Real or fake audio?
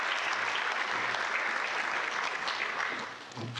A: real